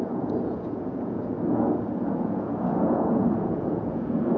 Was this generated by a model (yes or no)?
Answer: yes